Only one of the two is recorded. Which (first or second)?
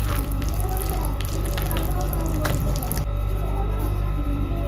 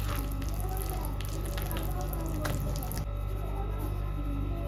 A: second